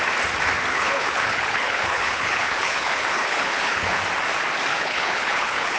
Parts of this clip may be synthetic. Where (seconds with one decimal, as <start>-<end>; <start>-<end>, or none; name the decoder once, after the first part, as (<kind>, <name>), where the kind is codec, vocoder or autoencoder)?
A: 0.7-4.0 (codec, HILCodec); 4.7-5.8